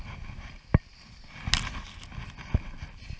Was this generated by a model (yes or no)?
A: no